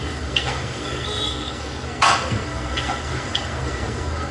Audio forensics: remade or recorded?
remade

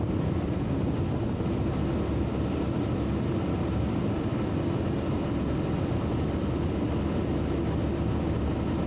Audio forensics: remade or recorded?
recorded